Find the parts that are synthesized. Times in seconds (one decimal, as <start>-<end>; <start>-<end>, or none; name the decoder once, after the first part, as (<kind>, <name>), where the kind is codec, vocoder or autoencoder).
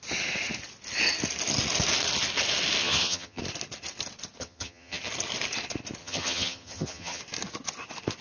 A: 2.8-3.4 (vocoder, HiFi-GAN); 4.4-5.0; 6.0-7.2